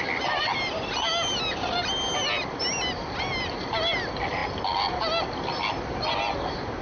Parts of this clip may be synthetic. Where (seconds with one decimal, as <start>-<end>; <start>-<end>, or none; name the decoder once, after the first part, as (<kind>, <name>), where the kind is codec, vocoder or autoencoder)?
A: none